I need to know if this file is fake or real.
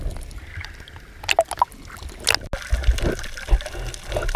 real